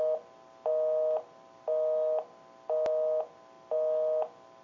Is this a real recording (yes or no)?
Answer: yes